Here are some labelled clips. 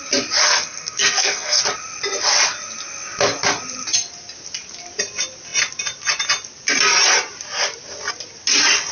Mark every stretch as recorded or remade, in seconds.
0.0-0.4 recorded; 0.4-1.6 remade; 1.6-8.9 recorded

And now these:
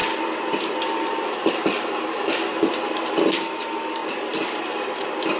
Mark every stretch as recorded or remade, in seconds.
0.0-5.4 recorded

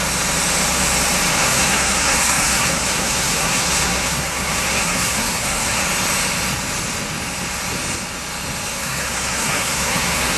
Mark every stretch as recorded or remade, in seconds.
0.0-1.4 recorded; 1.4-5.8 remade; 5.8-8.7 recorded; 8.7-10.4 remade

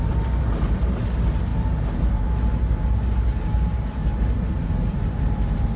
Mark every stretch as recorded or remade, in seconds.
0.0-5.8 recorded

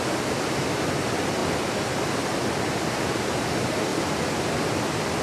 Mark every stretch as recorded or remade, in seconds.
0.0-5.2 recorded